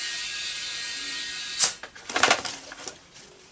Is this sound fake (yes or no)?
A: yes